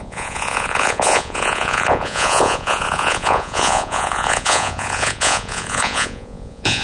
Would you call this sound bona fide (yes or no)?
no